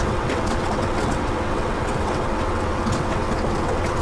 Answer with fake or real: fake